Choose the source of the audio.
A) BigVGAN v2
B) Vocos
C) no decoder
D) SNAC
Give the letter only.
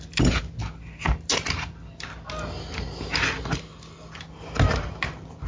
C